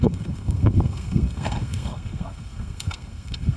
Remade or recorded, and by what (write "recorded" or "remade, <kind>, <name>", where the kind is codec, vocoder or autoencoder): remade, codec, SNAC